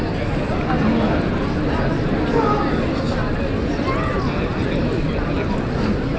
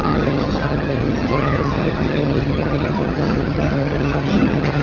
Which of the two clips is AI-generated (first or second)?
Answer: second